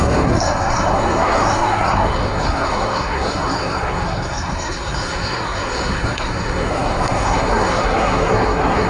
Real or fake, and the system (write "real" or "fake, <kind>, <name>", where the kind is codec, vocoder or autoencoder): fake, codec, SNAC